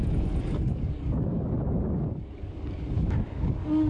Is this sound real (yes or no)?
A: no